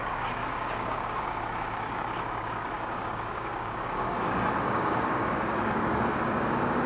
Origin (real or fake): fake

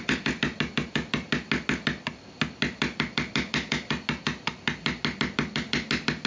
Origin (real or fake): real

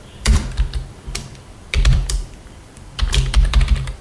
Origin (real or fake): fake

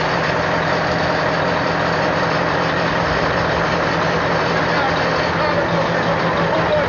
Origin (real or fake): real